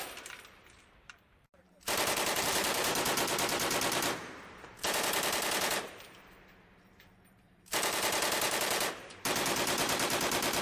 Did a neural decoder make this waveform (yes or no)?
yes